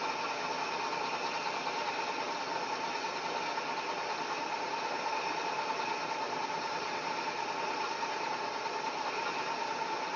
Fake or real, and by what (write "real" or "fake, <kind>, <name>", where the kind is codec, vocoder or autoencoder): real